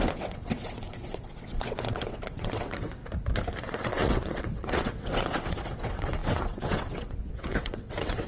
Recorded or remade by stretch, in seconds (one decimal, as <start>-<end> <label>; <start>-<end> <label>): 0.0-3.0 remade; 3.0-3.6 recorded; 3.6-8.3 remade